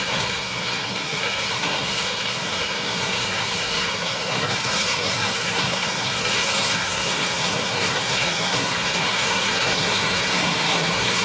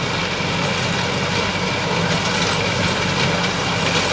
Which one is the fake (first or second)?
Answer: first